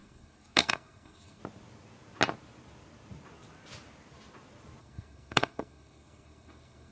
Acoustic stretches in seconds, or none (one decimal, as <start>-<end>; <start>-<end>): 1.4-4.8